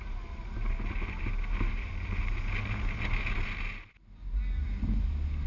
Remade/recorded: recorded